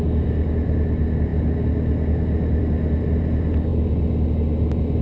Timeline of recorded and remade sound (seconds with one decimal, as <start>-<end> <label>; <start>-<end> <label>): 0.0-5.0 recorded

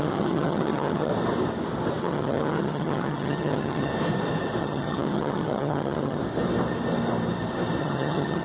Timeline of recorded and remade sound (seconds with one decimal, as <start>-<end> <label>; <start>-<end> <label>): 0.0-1.1 remade; 1.1-2.0 recorded; 2.0-3.9 remade; 3.9-4.6 recorded; 4.6-6.2 remade; 6.2-7.8 recorded; 7.8-8.4 remade

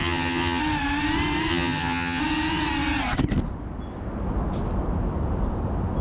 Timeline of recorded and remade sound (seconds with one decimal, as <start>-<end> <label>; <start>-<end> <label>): 0.0-0.6 remade; 0.6-1.5 recorded; 1.5-2.2 remade; 2.2-6.0 recorded

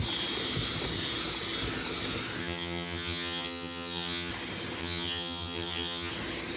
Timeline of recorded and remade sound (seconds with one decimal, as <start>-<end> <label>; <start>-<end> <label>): 0.0-2.4 recorded; 2.4-4.3 remade; 4.3-4.8 recorded; 4.8-6.1 remade; 6.1-6.6 recorded

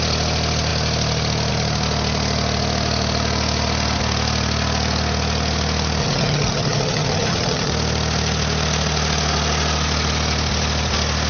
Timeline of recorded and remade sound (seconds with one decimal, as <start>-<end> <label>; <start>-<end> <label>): 0.0-6.0 recorded; 6.0-7.7 remade; 7.7-11.3 recorded

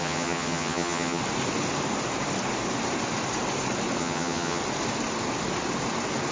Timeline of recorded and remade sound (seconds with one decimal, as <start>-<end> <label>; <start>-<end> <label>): 0.0-1.2 remade; 1.2-4.0 recorded; 4.0-4.6 remade; 4.6-6.3 recorded